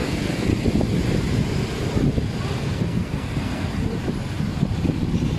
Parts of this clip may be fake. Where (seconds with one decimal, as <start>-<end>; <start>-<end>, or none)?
0.0-0.5; 2.6-3.7